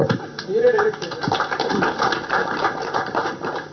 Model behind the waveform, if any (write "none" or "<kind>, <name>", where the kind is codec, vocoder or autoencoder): vocoder, BigVGAN v2